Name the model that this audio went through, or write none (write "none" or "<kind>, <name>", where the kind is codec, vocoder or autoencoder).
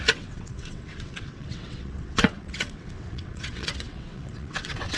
vocoder, WaveNeXt